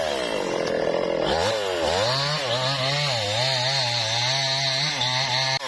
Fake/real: real